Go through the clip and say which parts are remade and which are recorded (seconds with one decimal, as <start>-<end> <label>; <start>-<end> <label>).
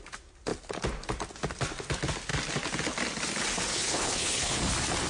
0.0-3.7 recorded; 3.7-4.6 remade; 4.6-5.1 recorded